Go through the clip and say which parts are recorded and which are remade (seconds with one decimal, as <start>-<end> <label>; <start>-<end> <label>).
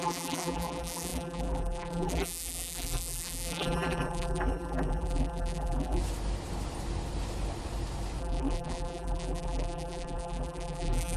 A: 0.0-6.0 remade; 6.0-8.2 recorded; 8.2-11.2 remade